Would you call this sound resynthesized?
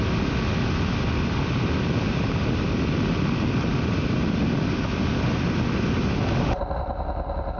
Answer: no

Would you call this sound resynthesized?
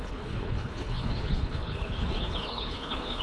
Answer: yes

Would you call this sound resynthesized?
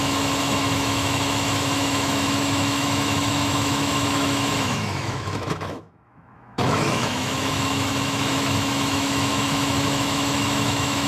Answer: yes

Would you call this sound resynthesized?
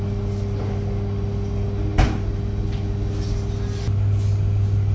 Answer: no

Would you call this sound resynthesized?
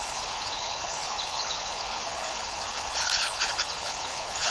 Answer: yes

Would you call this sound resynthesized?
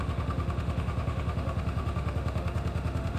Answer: yes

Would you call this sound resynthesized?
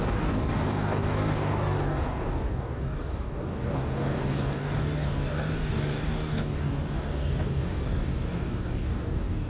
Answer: yes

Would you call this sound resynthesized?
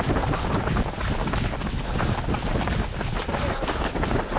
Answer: no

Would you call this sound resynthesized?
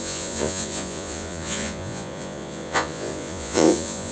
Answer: yes